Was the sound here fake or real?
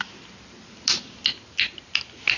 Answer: real